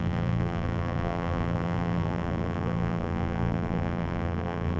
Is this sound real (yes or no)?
no